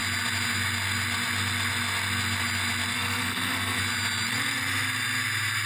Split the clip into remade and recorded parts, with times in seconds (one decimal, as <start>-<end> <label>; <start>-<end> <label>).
0.0-2.9 recorded; 2.9-3.8 remade; 3.8-5.7 recorded